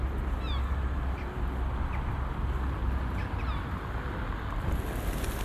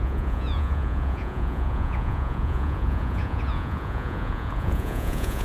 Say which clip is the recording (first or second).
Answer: first